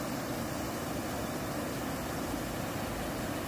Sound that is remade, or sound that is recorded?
recorded